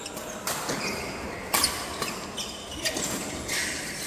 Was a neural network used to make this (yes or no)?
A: no